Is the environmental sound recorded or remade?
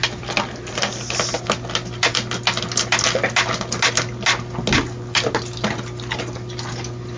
recorded